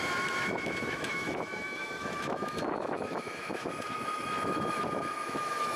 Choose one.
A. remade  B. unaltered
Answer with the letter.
A